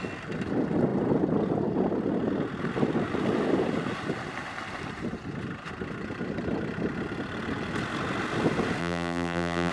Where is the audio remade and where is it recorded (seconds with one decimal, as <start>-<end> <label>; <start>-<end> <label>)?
0.0-8.8 recorded; 8.8-9.7 remade